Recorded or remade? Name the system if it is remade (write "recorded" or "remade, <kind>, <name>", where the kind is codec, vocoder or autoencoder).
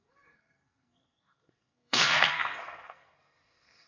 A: remade, codec, SNAC